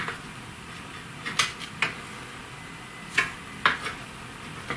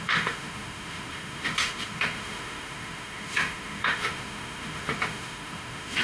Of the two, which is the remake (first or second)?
second